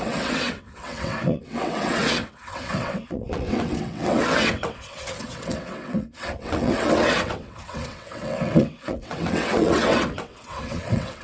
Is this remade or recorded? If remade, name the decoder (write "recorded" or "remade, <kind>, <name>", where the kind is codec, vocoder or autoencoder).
remade, vocoder, WaveNeXt